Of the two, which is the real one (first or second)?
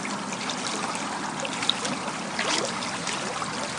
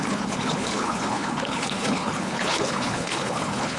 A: first